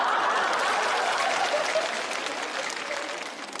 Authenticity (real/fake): real